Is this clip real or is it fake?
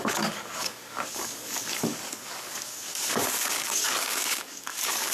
fake